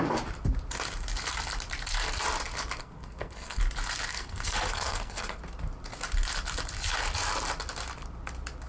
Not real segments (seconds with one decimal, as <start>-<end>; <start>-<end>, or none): 2.8-3.6; 4.1-5.4